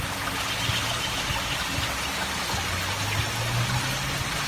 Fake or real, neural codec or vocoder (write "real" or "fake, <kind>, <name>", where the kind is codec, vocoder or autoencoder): real